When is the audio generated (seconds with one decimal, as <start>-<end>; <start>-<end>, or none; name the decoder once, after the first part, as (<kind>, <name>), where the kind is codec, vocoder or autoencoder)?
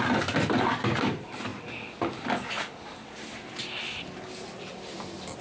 none